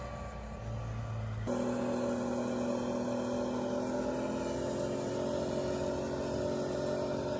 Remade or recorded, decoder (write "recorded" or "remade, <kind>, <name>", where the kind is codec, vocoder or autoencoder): recorded